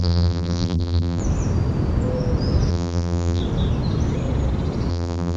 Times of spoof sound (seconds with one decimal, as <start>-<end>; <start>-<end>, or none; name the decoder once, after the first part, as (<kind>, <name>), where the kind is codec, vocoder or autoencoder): 0.0-1.2 (vocoder, BigVGAN v2); 2.7-3.4; 4.9-5.4